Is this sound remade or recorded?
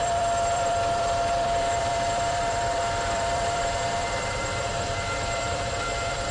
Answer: remade